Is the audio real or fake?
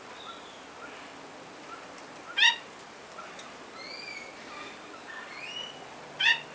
real